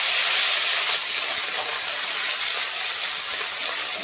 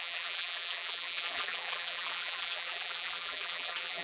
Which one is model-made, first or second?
second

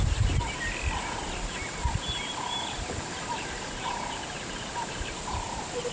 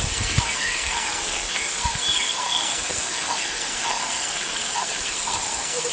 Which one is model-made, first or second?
second